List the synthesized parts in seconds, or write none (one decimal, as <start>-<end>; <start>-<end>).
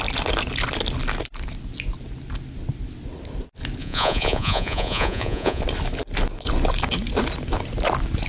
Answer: 3.8-5.6